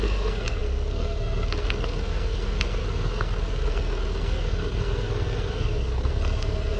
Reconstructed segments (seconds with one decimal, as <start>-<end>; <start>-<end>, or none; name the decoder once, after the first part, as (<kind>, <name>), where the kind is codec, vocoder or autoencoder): 0.0-6.8 (codec, SNAC)